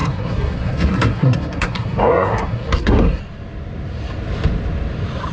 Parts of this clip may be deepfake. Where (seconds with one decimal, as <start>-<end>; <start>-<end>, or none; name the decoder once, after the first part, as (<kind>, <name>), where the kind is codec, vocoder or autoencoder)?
0.0-3.2 (codec, SNAC)